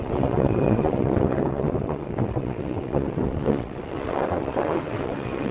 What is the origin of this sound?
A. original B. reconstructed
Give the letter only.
B